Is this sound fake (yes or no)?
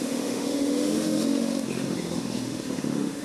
yes